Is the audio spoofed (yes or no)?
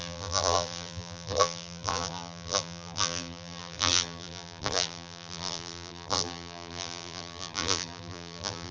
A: yes